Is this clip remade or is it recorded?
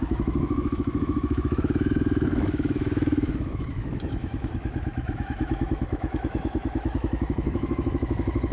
remade